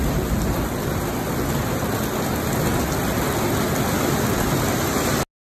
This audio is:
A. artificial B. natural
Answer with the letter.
B